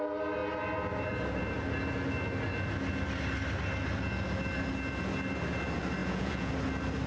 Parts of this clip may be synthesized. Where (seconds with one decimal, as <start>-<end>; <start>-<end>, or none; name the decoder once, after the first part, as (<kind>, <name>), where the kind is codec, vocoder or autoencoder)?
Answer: 6.0-6.5 (vocoder, Vocos)

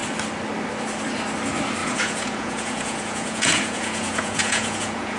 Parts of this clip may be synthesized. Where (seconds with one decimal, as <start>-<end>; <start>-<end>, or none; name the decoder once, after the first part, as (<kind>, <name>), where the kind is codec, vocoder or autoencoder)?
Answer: 1.8-5.2 (vocoder, Vocos)

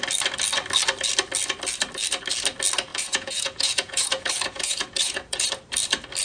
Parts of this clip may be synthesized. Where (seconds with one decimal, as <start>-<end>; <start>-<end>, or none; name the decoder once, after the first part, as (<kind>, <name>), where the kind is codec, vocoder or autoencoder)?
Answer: 2.9-5.5 (vocoder, Vocos)

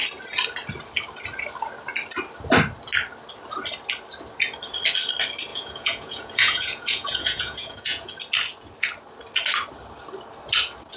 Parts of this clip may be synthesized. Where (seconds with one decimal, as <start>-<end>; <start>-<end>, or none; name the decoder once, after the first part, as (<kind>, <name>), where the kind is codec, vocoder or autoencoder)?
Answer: 5.5-8.1 (vocoder, Vocos)